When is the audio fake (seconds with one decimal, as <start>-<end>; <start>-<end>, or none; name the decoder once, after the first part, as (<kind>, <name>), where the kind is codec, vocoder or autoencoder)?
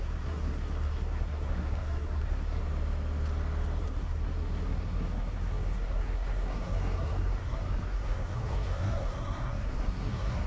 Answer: 0.0-2.6 (codec, SNAC); 3.8-10.5